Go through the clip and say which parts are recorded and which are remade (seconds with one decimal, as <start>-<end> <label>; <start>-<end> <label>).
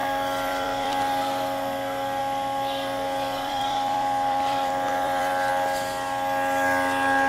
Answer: 0.0-1.2 remade; 1.2-2.2 recorded; 2.2-5.5 remade; 5.5-7.3 recorded